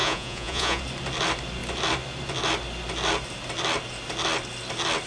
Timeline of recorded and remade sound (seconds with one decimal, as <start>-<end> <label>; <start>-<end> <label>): 0.0-0.8 remade; 0.8-5.1 recorded

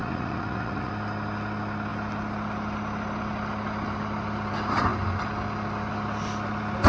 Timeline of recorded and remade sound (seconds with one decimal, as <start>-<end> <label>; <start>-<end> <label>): 0.0-0.9 remade; 0.9-6.9 recorded

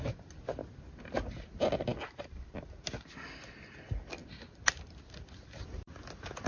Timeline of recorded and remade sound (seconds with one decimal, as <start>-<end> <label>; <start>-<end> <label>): 0.0-5.6 recorded; 5.6-6.5 remade

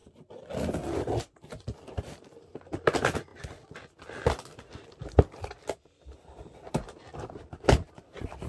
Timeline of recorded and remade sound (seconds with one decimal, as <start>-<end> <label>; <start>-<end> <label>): 0.0-3.3 remade; 3.3-6.7 recorded; 6.7-8.5 remade